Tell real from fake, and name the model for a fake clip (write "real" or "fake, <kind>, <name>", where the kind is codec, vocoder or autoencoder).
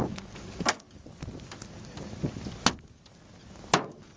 real